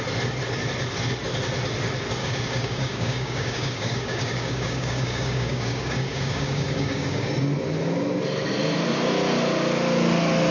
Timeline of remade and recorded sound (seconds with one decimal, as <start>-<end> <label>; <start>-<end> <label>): 0.0-2.2 recorded; 2.2-7.3 remade; 7.3-10.5 recorded